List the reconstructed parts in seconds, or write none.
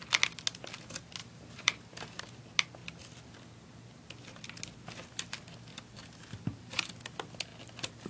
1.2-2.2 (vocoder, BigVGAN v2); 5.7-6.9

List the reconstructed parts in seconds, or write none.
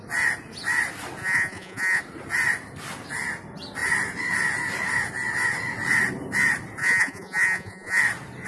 1.2-2.0 (vocoder, Vocos); 6.8-8.0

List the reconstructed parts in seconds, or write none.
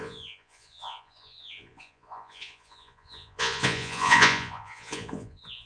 0.0-5.7 (vocoder, Vocos)